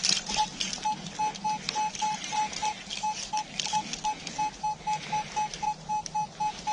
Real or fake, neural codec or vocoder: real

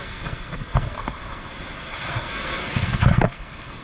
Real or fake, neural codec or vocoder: fake, codec, SNAC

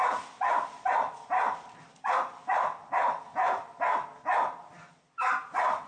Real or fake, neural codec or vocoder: real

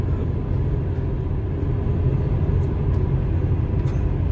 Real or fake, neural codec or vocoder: real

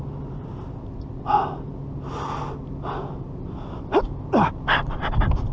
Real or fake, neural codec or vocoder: real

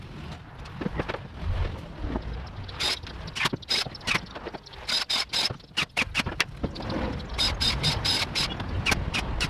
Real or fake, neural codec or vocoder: real